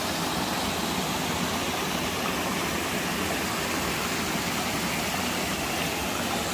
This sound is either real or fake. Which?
real